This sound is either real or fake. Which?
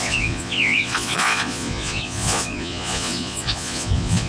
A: fake